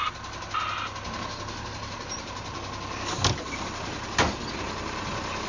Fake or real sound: real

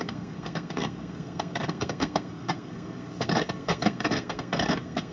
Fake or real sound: fake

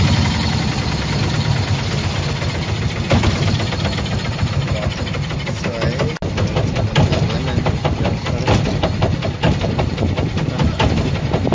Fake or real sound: real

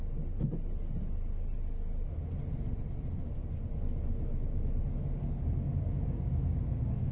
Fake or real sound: real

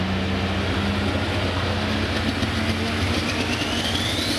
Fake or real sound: real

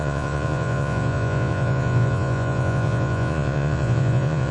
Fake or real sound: fake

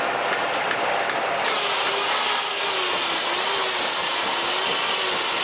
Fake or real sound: real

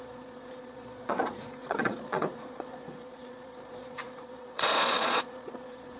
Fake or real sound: fake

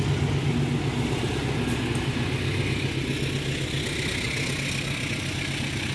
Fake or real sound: real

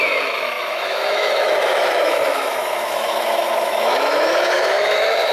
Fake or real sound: fake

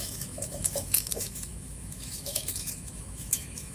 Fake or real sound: fake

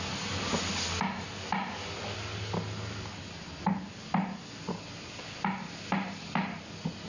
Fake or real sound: real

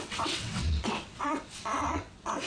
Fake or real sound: fake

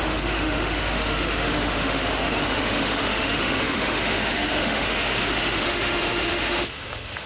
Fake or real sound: fake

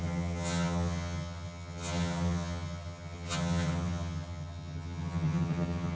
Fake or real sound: fake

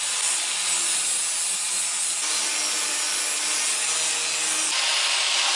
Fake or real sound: real